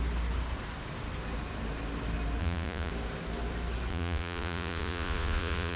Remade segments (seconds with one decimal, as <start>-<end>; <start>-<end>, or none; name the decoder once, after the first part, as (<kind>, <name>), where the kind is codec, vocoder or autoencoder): 2.4-2.9 (vocoder, Vocos); 3.9-5.8